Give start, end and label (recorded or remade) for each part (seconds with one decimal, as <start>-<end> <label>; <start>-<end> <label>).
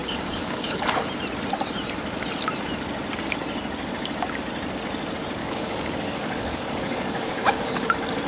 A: 0.0-0.8 remade; 0.8-5.4 recorded; 5.4-7.9 remade; 7.9-8.3 recorded